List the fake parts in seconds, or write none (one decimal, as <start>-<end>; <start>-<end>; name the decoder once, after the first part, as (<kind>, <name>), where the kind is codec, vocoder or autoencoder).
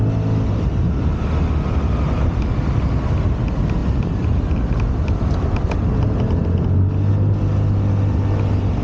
none